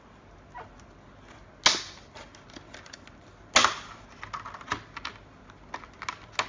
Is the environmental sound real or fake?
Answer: real